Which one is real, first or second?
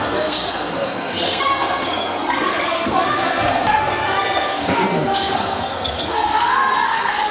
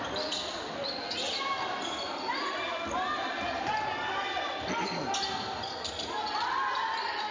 second